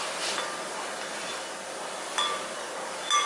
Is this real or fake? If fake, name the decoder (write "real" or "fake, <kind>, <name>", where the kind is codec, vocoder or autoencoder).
real